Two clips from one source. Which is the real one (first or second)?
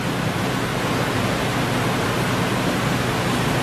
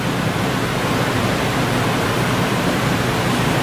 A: first